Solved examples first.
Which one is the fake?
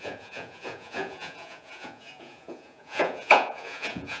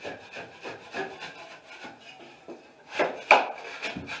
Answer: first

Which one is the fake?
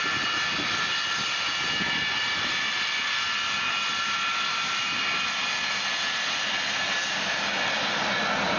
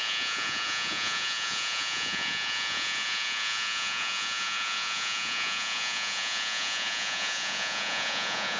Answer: second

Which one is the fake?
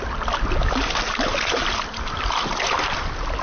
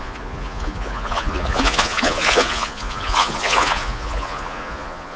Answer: second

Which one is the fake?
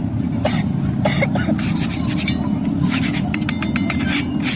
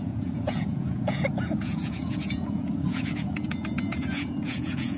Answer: second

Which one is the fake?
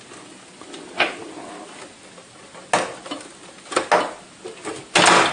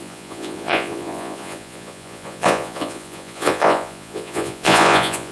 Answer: second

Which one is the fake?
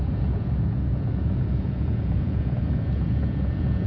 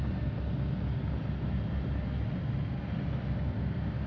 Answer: first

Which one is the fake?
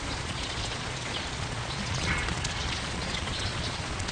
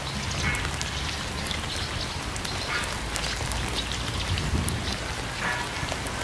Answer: first